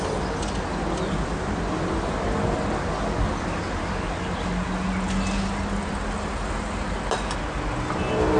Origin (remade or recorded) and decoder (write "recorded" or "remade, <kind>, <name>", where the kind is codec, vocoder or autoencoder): recorded